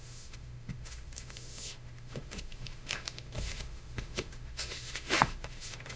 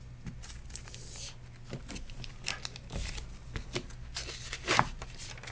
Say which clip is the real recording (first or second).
second